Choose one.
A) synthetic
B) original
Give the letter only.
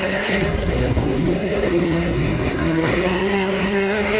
A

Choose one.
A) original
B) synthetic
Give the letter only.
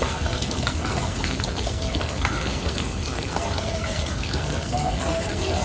B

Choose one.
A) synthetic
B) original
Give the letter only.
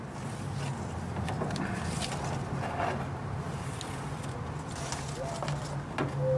B